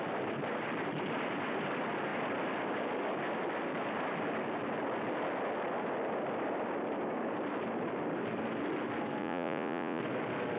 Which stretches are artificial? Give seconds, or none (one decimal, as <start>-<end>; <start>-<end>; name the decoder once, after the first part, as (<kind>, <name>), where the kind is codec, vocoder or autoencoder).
9.2-10.0 (vocoder, Vocos)